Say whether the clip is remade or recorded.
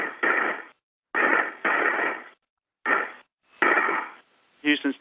recorded